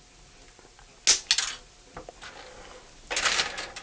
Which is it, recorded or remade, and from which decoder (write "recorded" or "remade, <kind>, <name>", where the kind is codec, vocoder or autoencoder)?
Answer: recorded